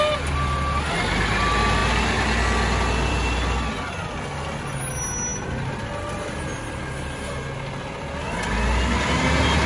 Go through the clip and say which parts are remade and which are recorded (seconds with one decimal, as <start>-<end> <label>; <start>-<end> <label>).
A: 0.0-9.7 recorded